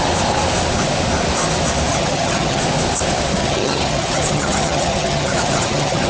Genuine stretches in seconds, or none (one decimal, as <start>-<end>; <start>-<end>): 0.0-1.9; 2.6-3.4